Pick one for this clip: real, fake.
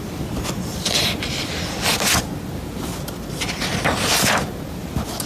real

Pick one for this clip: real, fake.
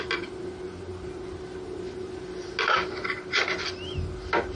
real